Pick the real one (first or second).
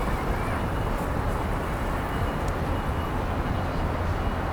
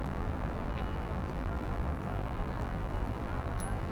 first